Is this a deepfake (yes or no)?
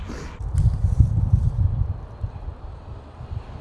no